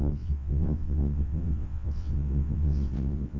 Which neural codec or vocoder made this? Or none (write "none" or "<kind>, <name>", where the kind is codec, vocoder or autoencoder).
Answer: vocoder, WaveNeXt